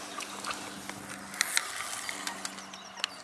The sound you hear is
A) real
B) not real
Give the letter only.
A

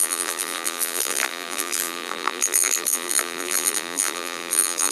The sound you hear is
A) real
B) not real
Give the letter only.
B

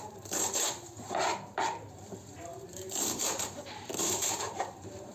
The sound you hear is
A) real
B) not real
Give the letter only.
B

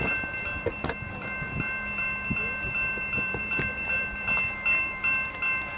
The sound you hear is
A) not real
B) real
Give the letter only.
A